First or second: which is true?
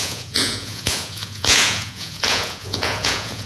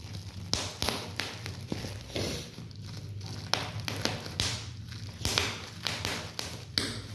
second